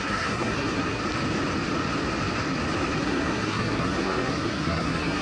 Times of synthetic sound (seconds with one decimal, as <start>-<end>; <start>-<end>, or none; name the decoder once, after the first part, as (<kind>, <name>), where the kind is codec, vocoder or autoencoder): 0.0-1.0 (codec, SNAC); 3.0-5.2

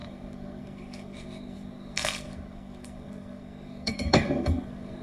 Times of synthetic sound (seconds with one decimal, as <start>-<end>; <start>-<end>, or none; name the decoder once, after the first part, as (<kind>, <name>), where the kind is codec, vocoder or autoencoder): 0.0-5.0 (codec, SNAC)

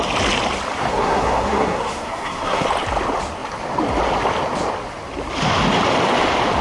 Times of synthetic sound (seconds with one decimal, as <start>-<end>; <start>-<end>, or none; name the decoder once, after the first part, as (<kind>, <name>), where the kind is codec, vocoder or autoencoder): 0.9-2.7 (codec, SNAC)

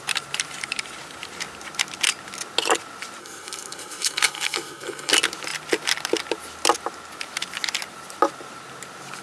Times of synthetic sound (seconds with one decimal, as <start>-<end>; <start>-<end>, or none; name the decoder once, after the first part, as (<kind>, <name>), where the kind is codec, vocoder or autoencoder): 3.2-5.1 (codec, SNAC)

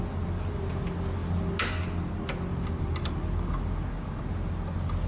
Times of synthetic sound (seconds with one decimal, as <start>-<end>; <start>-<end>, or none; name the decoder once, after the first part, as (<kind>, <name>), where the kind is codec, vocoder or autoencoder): none

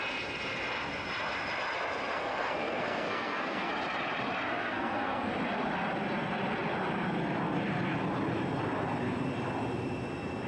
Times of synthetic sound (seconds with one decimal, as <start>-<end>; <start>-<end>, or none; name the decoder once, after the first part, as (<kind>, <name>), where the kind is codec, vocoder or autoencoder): 2.1-3.7 (codec, SNAC); 4.5-5.3

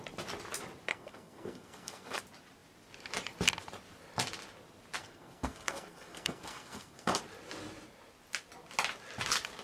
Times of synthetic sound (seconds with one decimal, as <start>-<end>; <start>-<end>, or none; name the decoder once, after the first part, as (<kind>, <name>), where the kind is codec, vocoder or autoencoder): 0.9-2.2 (codec, SNAC); 5.0-7.2

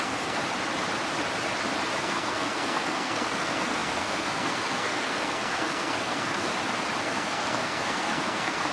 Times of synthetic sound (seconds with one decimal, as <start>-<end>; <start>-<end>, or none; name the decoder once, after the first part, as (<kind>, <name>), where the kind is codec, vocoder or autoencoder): 0.0-0.4 (codec, SNAC); 2.0-6.5; 7.0-8.7